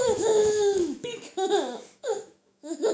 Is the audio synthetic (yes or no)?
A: yes